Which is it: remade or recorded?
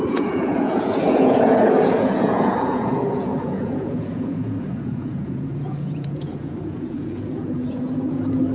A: remade